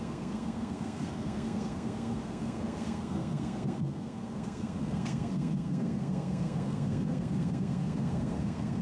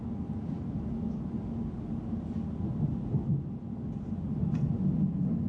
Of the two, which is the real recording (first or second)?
second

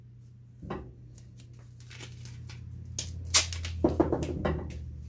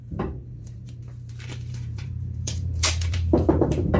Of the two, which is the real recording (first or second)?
first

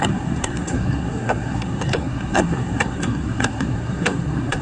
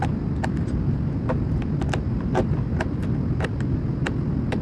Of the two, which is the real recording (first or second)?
second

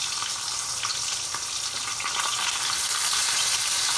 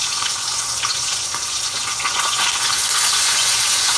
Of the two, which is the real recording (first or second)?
first